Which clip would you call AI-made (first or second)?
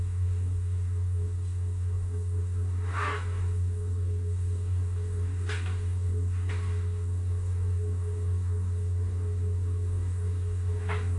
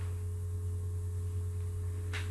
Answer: first